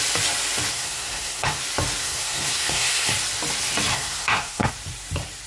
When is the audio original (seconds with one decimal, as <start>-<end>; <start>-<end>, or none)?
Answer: 0.0-0.7; 1.6-2.0; 3.1-3.9; 4.7-5.5